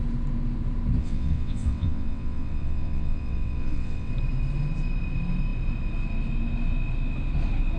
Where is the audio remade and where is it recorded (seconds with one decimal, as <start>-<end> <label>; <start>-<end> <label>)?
0.0-1.0 recorded; 1.0-4.1 remade; 4.1-7.8 recorded